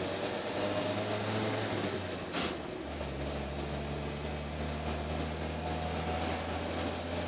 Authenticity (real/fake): real